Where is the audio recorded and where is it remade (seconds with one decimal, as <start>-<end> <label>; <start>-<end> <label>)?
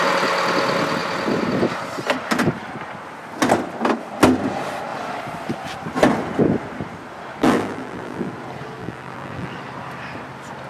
0.0-7.4 recorded; 7.4-8.3 remade; 8.3-8.8 recorded; 8.8-9.5 remade; 9.5-10.7 recorded